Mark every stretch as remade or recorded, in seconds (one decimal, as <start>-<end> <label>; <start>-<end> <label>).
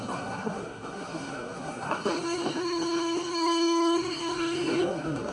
0.0-5.3 remade